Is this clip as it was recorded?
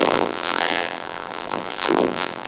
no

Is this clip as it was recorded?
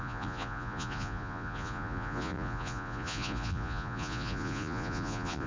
no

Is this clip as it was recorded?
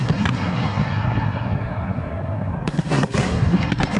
no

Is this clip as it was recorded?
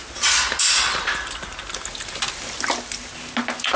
yes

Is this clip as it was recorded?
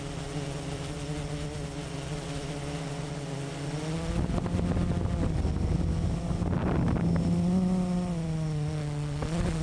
yes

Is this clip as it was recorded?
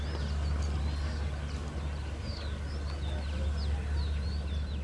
yes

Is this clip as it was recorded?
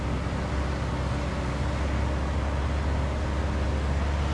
yes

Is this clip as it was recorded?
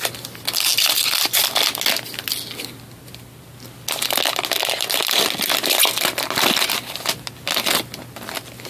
yes